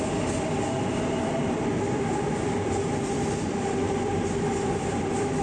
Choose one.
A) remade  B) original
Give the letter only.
A